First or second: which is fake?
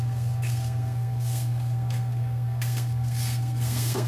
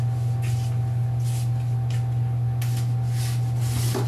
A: first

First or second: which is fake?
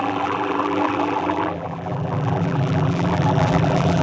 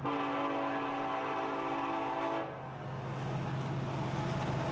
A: first